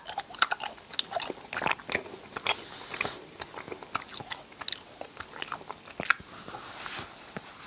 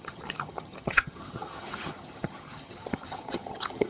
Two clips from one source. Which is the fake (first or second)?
second